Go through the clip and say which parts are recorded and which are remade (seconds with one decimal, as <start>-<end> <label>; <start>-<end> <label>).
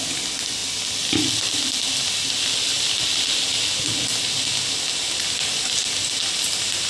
0.0-6.9 recorded